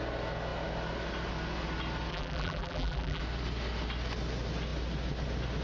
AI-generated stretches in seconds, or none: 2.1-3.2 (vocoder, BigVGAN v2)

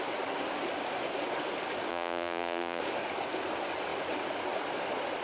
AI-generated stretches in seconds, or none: 1.9-2.8 (vocoder, BigVGAN v2)

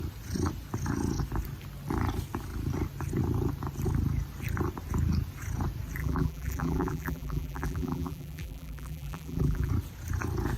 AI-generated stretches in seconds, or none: 6.0-9.7 (vocoder, BigVGAN v2)